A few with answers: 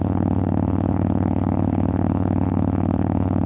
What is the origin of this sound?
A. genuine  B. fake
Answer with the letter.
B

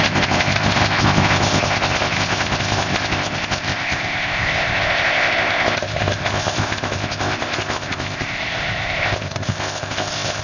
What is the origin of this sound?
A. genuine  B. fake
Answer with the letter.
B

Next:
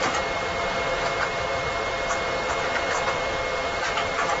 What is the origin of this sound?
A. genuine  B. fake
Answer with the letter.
A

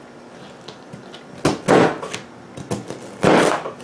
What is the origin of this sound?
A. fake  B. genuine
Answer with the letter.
B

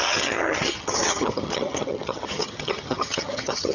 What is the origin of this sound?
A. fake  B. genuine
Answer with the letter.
A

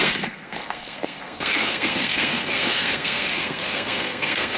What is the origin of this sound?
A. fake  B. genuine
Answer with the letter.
A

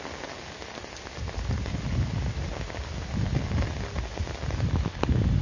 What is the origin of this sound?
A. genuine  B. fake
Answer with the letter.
A